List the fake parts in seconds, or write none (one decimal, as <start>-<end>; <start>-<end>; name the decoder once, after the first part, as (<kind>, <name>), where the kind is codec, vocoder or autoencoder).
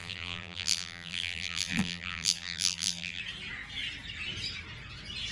0.0-3.2 (vocoder, BigVGAN v2)